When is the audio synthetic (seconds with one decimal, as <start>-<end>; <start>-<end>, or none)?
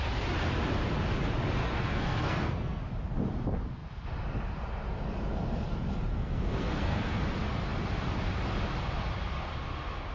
1.6-2.8; 6.1-7.2